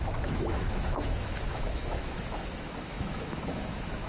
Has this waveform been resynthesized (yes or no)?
yes